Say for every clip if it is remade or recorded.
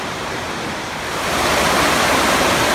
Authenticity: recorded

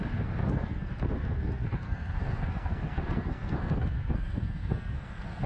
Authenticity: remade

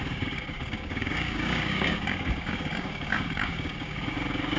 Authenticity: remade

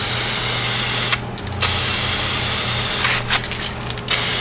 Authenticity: recorded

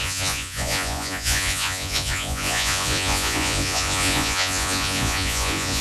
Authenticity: remade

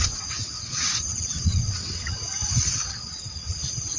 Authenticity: remade